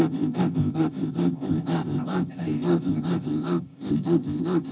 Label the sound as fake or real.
fake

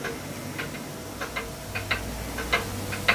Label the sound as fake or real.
real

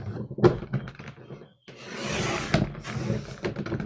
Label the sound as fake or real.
real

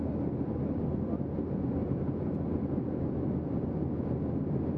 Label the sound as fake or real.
real